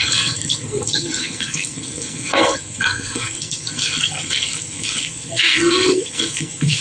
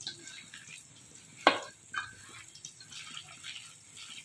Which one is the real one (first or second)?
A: second